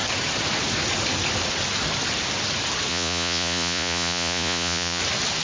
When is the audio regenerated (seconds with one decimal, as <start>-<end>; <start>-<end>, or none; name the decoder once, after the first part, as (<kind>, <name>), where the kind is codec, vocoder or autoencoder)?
2.9-5.0 (vocoder, Vocos)